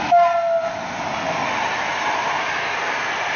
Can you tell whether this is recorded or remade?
recorded